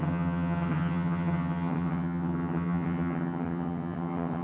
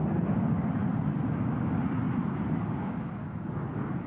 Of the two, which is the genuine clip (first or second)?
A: second